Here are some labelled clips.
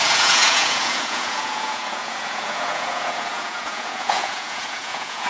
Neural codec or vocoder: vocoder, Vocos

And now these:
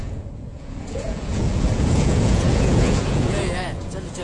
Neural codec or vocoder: vocoder, Vocos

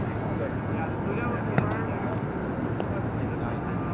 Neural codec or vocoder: none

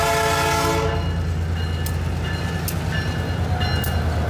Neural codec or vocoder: none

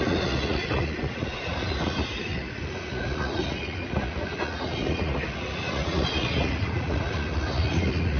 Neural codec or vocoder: vocoder, Vocos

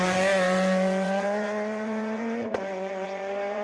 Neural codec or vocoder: vocoder, Vocos